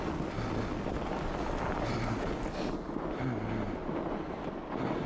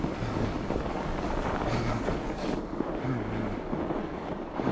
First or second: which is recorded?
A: first